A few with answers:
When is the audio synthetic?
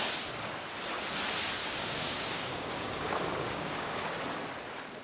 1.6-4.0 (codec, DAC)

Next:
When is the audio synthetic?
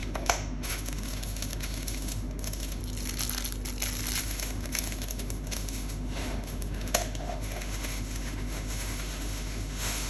0.0-2.8 (autoencoder, DAC-VAE); 4.2-10.1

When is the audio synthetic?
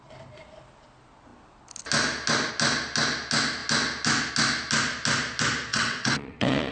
5.7-6.7 (vocoder, WaveNeXt)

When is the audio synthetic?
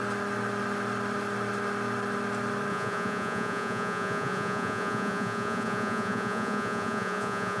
2.7-7.6 (vocoder, Vocos)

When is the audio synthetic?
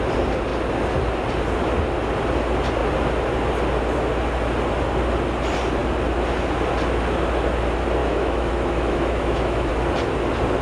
8.0-9.7 (autoencoder, DAC-VAE)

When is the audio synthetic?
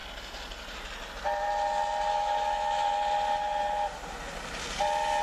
2.1-2.9 (autoencoder, DAC-VAE)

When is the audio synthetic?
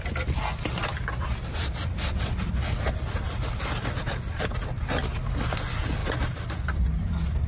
none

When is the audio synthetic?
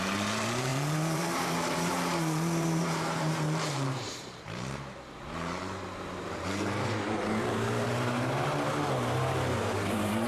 0.0-10.3 (vocoder, BigVGAN v2)